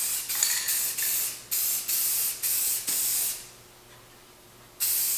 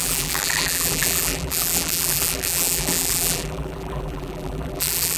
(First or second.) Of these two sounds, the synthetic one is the second